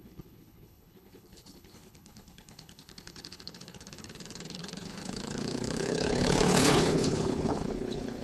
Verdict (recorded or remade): remade